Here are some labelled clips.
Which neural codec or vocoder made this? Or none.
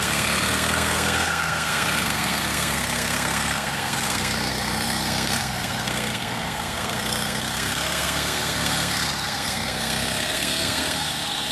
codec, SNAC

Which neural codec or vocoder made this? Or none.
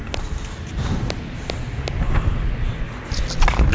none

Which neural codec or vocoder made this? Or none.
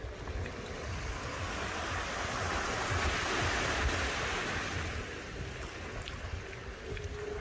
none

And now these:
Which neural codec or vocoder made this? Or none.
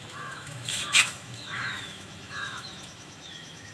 autoencoder, DAC-VAE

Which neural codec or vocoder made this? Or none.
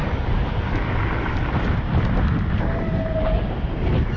none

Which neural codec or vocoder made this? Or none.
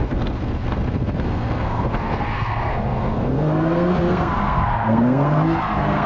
codec, SNAC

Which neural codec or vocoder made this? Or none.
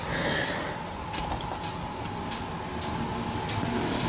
none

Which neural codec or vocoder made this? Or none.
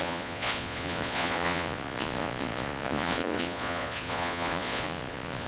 vocoder, Vocos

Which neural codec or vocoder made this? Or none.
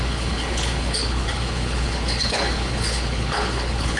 codec, HILCodec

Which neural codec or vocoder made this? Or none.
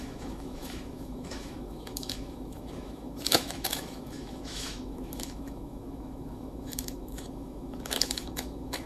autoencoder, DAC-VAE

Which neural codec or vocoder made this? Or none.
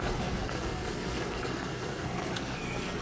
codec, SNAC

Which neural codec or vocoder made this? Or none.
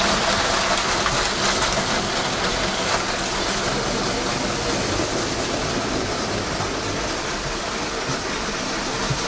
none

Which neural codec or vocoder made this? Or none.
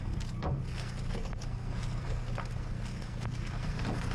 codec, SNAC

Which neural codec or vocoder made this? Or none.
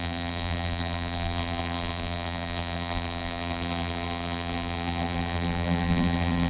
vocoder, BigVGAN v2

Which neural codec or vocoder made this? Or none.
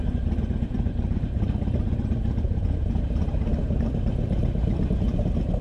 vocoder, BigVGAN v2